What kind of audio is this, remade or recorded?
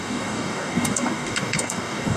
remade